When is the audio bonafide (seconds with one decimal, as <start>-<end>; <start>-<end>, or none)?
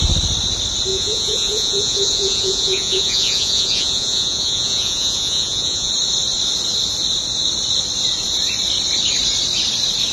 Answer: 0.0-0.9; 5.9-10.1